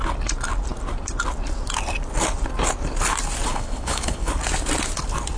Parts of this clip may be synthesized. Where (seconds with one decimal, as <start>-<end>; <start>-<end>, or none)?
3.5-4.3